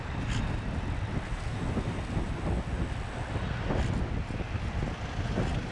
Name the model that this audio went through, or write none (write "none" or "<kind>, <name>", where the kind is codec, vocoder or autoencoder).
none